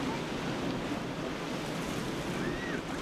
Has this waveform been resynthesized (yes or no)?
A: no